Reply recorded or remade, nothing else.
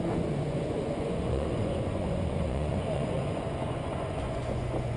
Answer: remade